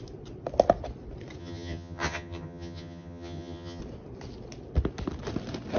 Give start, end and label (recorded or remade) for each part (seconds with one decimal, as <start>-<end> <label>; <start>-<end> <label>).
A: 0.0-1.4 recorded; 1.4-3.8 remade; 3.8-5.8 recorded